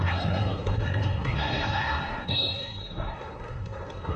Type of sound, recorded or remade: remade